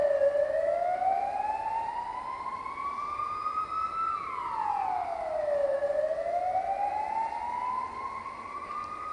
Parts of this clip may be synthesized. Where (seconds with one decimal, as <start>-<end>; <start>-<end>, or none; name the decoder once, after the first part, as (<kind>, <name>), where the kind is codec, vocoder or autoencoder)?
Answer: none